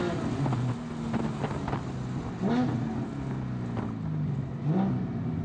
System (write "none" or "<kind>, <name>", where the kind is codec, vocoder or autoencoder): none